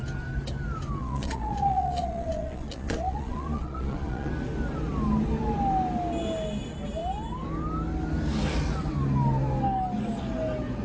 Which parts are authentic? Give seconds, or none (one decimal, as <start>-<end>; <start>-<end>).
0.0-1.0; 4.3-10.8